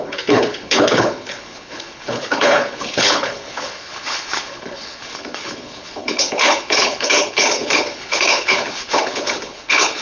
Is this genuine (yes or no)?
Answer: no